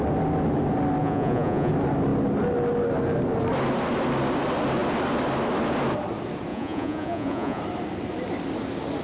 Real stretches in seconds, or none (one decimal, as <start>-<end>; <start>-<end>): 0.0-1.0; 1.7-6.5; 7.6-9.0